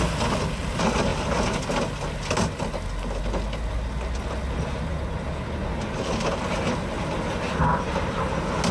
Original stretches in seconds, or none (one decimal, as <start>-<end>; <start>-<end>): 0.0-8.7